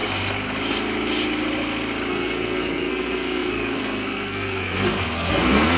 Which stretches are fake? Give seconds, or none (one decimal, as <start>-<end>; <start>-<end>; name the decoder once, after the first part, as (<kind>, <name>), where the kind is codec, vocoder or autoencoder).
2.1-5.8 (codec, SNAC)